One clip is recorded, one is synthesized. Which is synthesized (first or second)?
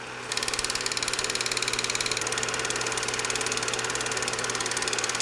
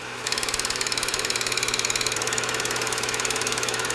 second